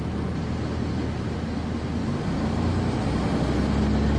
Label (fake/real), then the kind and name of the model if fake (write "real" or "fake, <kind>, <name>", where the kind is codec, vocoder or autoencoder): real